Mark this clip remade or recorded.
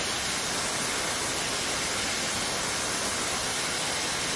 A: recorded